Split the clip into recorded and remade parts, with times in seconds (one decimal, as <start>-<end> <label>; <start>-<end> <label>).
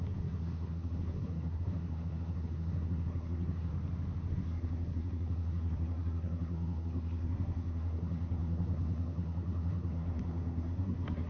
0.0-3.7 remade; 3.7-4.3 recorded; 4.3-11.3 remade